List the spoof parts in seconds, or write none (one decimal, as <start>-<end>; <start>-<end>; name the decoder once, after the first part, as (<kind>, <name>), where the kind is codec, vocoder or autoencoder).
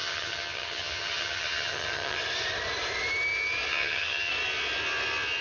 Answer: 0.0-2.2 (vocoder, HiFi-GAN); 3.7-4.3